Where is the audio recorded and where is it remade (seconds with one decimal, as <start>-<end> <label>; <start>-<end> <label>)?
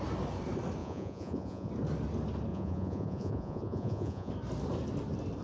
0.0-0.8 recorded; 0.8-1.7 remade; 1.7-2.5 recorded; 2.5-4.3 remade; 4.3-5.4 recorded